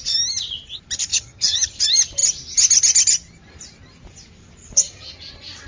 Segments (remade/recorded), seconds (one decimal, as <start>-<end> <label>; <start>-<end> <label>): 0.0-1.1 recorded; 1.1-1.8 remade; 1.8-5.7 recorded